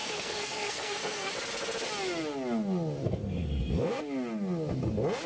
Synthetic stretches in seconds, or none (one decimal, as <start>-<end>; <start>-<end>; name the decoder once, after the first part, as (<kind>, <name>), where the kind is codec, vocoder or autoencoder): 0.0-1.3 (codec, SNAC); 3.0-4.0